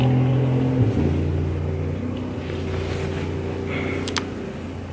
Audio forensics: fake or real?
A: real